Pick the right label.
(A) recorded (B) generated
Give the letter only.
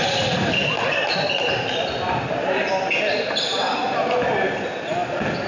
A